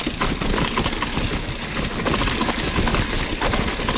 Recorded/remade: recorded